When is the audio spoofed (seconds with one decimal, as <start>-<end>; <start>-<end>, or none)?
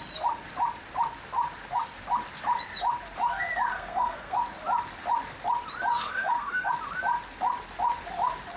3.7-4.4; 5.9-6.7